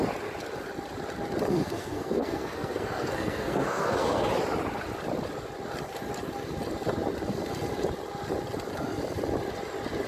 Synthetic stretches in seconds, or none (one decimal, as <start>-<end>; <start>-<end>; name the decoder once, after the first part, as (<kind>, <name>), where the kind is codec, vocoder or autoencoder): 1.5-4.3 (codec, SNAC)